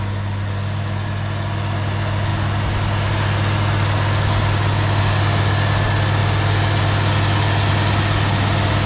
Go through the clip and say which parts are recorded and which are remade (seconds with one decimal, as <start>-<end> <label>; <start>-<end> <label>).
0.0-8.9 recorded